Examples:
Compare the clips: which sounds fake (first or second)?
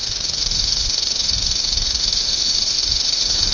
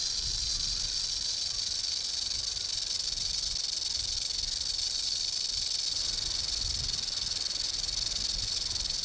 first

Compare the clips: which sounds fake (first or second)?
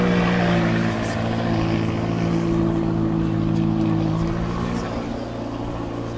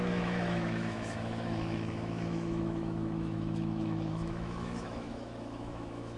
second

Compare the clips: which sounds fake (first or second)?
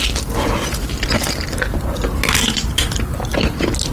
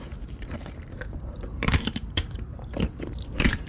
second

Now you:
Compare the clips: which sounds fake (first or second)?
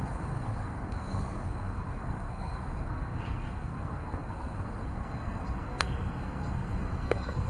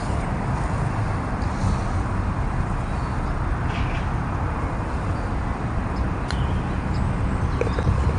first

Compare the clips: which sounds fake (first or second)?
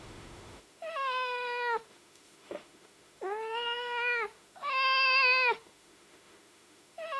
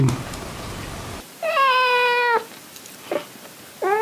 first